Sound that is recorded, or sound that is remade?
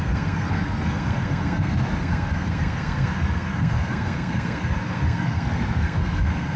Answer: remade